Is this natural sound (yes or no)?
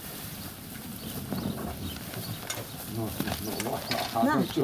yes